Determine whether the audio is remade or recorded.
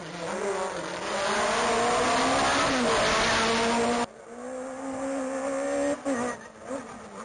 recorded